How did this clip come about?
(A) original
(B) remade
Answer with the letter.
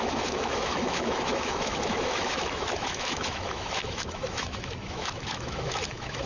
B